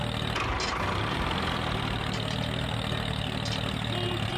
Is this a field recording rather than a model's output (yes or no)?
yes